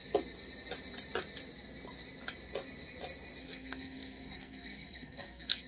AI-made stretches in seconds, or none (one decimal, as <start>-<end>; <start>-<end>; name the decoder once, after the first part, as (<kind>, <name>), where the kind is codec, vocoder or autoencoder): 3.4-5.7 (codec, SNAC)